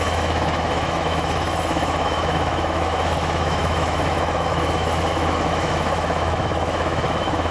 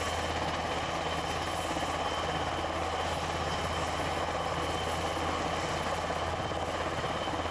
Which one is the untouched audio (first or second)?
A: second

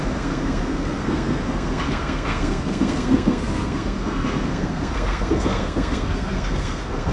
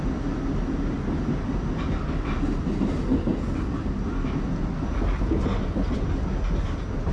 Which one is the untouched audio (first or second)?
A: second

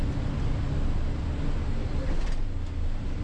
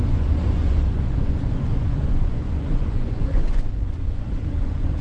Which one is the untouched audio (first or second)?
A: first